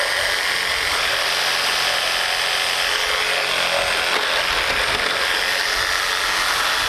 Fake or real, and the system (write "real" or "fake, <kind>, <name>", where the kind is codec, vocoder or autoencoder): real